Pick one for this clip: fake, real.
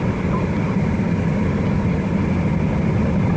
real